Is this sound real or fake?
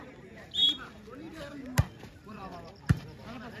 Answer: fake